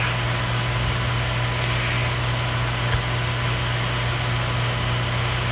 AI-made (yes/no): no